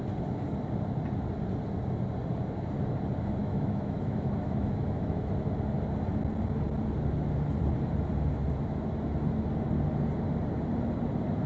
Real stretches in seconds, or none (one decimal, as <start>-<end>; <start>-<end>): 0.0-3.4; 5.3-11.5